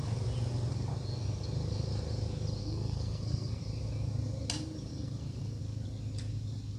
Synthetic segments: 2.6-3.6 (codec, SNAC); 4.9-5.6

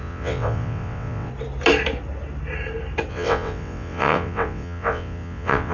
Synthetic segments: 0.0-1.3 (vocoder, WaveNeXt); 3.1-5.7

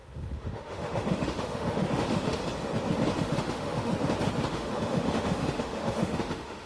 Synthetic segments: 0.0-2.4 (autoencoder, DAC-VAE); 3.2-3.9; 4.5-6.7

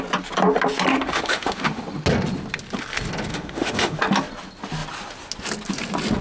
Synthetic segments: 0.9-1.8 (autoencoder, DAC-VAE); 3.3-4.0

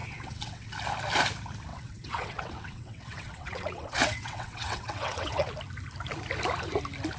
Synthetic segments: 0.0-0.7 (vocoder, WaveNeXt); 1.7-5.5

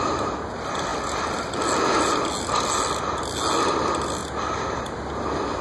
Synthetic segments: none